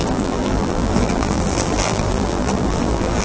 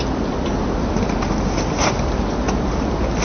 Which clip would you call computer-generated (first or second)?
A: first